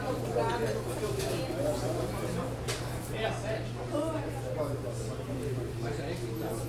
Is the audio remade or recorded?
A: recorded